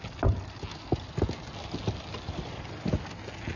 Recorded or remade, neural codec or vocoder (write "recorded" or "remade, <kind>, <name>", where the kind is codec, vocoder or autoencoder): recorded